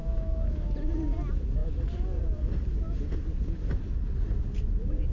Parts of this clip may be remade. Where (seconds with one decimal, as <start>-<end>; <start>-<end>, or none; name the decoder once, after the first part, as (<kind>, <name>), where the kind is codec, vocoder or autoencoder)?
0.0-0.7 (autoencoder, DAC-VAE)